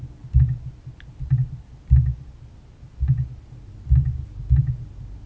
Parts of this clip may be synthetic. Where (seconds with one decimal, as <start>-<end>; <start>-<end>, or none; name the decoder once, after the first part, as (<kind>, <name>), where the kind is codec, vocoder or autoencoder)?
none